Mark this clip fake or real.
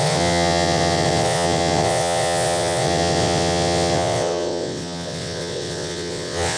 fake